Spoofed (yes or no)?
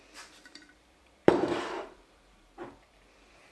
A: yes